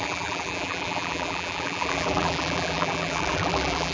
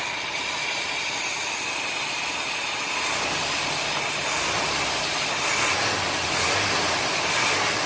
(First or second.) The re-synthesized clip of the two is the first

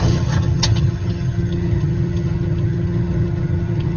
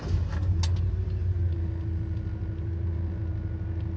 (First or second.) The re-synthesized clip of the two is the first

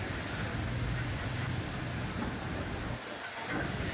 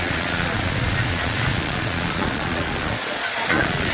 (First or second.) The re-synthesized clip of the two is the second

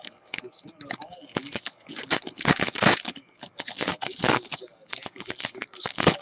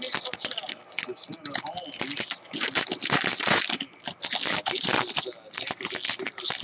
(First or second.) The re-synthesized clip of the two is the first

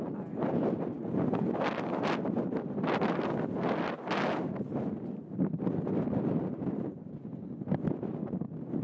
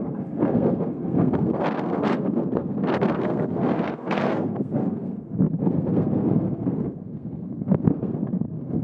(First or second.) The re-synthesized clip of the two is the second